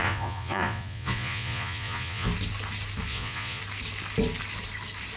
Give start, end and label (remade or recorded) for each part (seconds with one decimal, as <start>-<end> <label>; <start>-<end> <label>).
0.0-2.3 remade; 2.3-3.1 recorded; 3.1-3.6 remade; 3.6-5.2 recorded